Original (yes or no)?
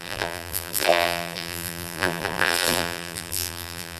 no